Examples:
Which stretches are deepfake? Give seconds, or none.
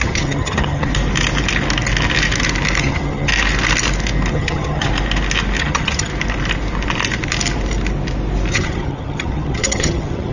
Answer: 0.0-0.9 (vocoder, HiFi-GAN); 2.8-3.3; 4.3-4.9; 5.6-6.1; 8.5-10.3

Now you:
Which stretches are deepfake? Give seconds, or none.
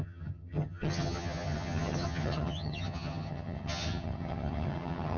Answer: 0.0-5.2 (vocoder, HiFi-GAN)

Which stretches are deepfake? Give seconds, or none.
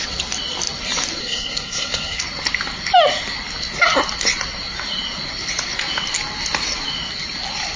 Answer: 1.2-2.2 (codec, SNAC)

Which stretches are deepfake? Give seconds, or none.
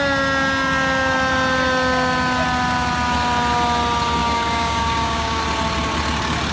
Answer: 4.2-5.4 (codec, DAC)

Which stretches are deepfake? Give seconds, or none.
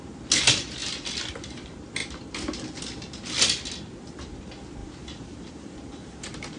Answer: 4.8-6.6 (vocoder, BigVGAN v2)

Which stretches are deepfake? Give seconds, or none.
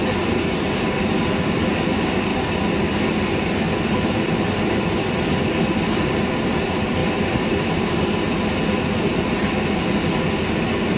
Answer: 2.3-6.5 (vocoder, BigVGAN v2); 7.0-7.5